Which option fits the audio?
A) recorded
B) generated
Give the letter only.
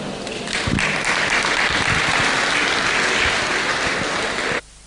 A